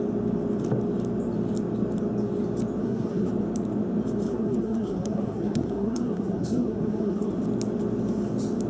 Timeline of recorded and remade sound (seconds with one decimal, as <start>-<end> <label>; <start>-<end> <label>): 0.0-2.8 recorded; 2.8-3.3 remade; 3.3-4.3 recorded; 4.3-7.3 remade; 7.3-8.7 recorded